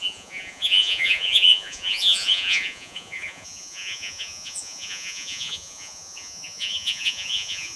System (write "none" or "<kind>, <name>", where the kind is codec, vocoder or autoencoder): vocoder, Vocos